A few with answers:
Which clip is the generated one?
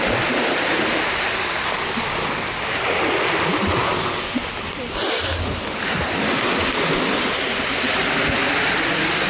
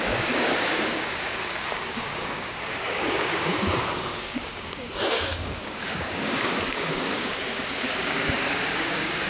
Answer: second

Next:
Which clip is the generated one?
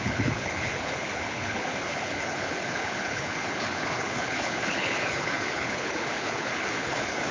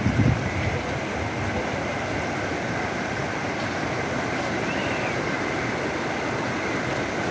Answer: first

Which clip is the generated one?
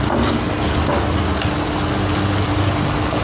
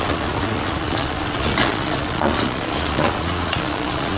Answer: second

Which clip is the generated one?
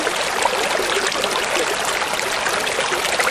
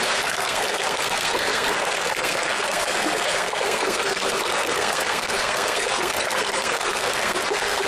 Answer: second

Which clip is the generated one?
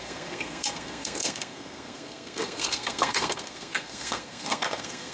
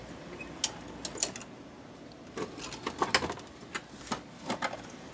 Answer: first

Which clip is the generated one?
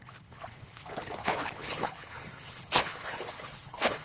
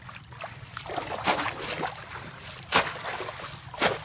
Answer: first